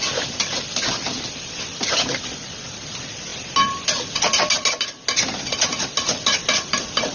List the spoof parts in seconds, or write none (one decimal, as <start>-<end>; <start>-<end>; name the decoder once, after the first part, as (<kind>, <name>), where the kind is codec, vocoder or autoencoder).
none